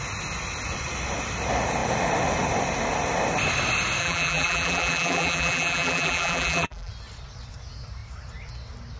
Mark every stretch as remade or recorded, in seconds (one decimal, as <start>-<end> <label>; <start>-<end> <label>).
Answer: 0.0-4.0 recorded; 4.0-6.9 remade; 6.9-9.0 recorded